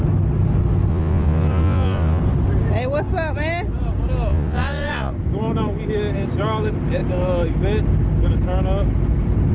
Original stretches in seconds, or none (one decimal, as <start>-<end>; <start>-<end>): 0.0-0.9; 2.2-4.3; 5.1-9.5